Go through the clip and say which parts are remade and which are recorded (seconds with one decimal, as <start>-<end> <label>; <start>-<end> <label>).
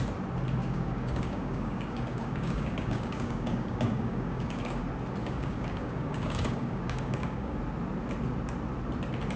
0.0-0.6 recorded; 0.6-4.8 remade; 4.8-5.2 recorded; 5.2-7.6 remade; 7.6-9.4 recorded